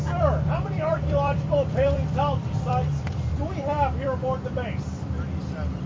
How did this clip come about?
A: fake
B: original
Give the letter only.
A